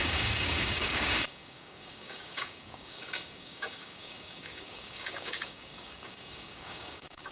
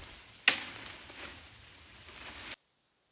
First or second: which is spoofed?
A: first